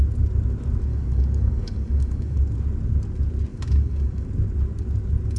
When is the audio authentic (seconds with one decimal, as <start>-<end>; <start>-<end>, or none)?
0.0-0.9; 2.4-3.5; 4.3-5.4